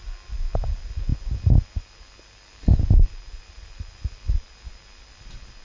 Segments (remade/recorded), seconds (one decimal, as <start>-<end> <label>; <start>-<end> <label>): 0.0-5.6 recorded